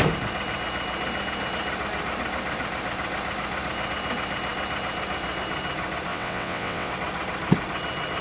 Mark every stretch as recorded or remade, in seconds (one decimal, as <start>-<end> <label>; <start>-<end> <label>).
0.0-6.1 recorded; 6.1-6.9 remade; 6.9-8.2 recorded